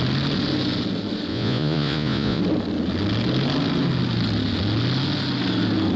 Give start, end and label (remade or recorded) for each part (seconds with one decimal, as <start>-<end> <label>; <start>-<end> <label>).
0.0-1.3 recorded; 1.3-2.4 remade; 2.4-6.0 recorded